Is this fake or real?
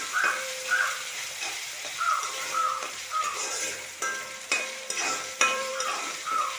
fake